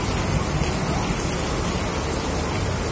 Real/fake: real